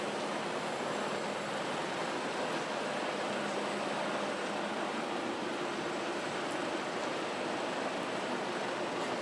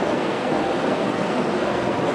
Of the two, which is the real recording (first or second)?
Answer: first